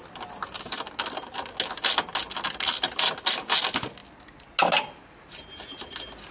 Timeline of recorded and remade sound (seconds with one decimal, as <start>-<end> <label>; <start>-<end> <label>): 0.0-6.3 recorded